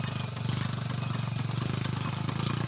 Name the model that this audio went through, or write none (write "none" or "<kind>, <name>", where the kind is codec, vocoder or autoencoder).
none